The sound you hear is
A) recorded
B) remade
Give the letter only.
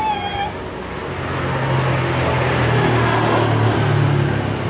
A